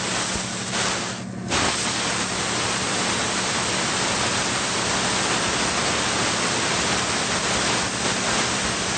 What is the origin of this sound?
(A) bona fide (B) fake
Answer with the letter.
A